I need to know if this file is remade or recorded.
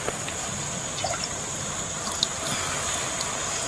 recorded